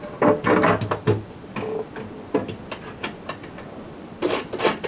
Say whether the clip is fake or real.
real